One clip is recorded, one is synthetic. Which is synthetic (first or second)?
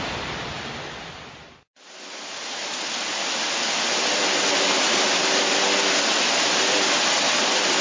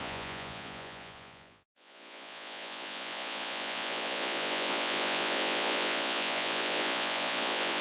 second